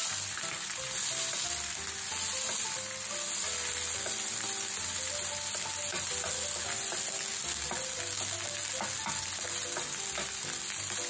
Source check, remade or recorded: recorded